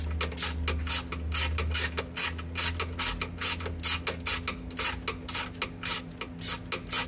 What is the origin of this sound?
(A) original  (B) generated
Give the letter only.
A